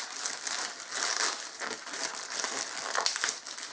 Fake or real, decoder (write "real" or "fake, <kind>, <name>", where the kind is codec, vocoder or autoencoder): real